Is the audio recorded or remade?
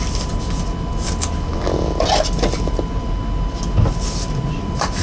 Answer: recorded